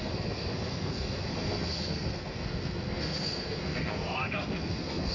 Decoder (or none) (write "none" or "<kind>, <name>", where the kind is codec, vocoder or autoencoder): codec, SNAC